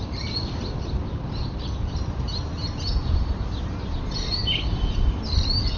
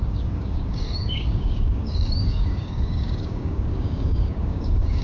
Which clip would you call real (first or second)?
first